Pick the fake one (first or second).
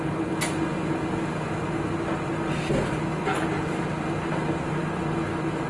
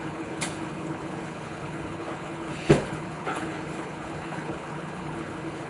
second